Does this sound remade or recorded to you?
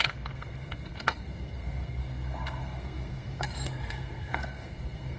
remade